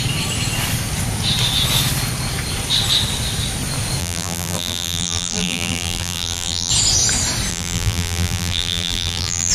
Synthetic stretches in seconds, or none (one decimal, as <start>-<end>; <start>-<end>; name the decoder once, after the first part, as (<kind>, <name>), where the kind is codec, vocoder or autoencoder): 4.0-6.7 (vocoder, BigVGAN v2); 7.5-9.5